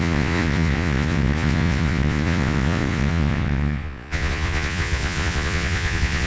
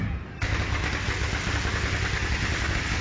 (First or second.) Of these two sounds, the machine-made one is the first